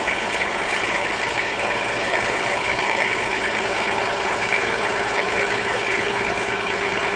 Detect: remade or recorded remade